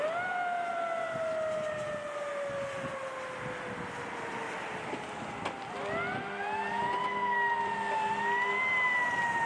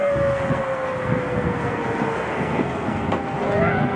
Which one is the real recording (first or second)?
first